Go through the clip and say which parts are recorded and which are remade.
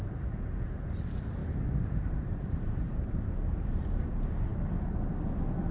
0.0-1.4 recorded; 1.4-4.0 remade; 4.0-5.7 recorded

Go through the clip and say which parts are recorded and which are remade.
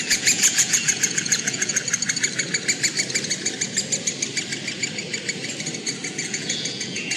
0.0-1.8 remade; 1.8-6.1 recorded; 6.1-7.2 remade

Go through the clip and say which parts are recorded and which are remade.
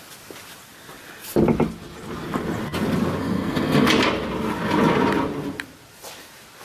0.0-3.2 recorded; 3.2-3.9 remade; 3.9-6.6 recorded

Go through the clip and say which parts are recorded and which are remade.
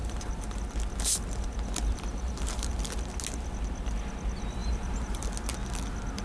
0.0-0.6 remade; 0.6-2.1 recorded; 2.1-2.7 remade; 2.7-4.6 recorded; 4.6-5.2 remade; 5.2-6.2 recorded